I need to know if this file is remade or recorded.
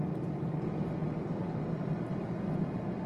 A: recorded